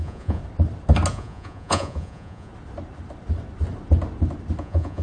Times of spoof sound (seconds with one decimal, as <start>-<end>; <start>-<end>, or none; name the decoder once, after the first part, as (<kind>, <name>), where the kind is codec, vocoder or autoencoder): 0.0-0.4 (vocoder, Vocos); 1.1-2.5; 4.6-5.0